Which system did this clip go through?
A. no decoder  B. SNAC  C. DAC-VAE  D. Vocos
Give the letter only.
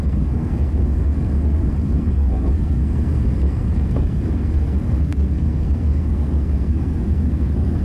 B